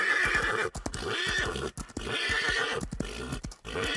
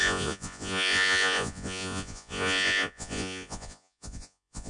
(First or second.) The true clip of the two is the first